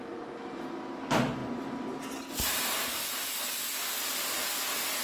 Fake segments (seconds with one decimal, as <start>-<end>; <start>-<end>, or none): none

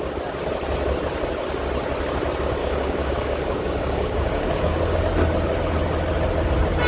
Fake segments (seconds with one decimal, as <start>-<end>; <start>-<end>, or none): 2.6-5.0